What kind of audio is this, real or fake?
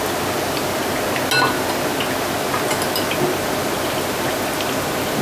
real